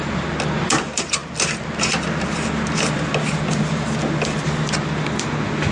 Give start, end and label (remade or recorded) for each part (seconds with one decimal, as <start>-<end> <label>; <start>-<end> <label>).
0.0-5.7 recorded